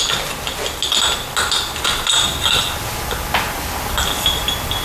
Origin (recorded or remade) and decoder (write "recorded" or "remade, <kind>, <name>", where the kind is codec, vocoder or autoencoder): recorded